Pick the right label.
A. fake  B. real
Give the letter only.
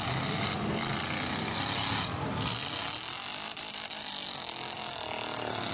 B